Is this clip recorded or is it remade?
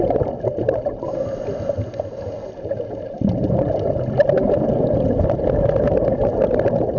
recorded